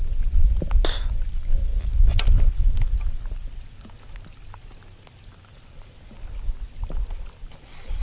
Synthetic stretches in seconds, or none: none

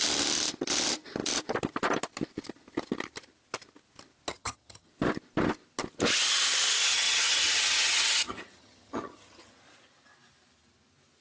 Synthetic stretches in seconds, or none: 4.3-4.9 (vocoder, HiFi-GAN); 6.9-9.5